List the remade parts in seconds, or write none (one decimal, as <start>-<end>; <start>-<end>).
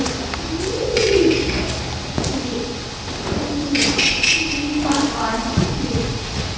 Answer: 5.4-6.6